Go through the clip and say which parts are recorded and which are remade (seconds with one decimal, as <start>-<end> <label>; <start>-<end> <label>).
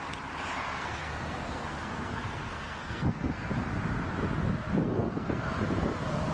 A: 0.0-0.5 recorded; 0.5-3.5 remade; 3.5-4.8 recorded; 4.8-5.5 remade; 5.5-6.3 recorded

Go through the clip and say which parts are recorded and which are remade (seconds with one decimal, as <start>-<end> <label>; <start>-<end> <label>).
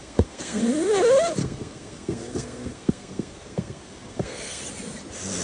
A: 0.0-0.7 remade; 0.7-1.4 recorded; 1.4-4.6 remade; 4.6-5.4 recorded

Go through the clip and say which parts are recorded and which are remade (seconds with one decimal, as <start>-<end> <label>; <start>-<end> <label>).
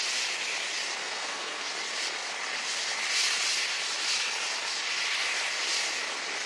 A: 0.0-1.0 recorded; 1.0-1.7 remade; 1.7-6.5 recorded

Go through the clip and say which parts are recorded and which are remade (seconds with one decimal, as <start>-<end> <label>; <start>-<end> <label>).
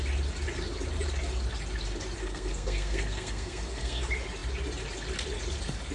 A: 0.0-2.2 recorded; 2.2-4.0 remade; 4.0-5.9 recorded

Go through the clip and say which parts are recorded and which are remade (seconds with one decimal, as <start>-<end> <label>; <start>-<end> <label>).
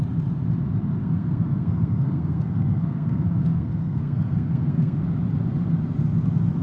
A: 0.0-1.0 recorded; 1.0-5.0 remade; 5.0-6.6 recorded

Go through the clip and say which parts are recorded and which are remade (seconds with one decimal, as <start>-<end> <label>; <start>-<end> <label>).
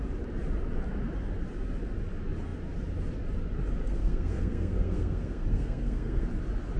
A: 0.0-3.8 recorded; 3.8-6.3 remade; 6.3-6.8 recorded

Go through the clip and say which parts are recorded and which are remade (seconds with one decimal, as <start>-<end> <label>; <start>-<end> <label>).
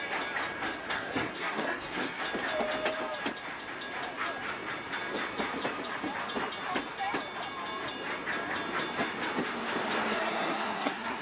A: 0.0-0.8 recorded; 0.8-2.2 remade; 2.2-10.1 recorded; 10.1-11.2 remade